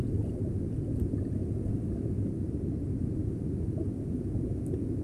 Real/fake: real